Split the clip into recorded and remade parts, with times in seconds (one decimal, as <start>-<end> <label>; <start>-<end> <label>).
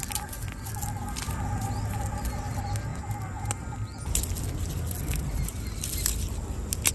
0.0-6.9 recorded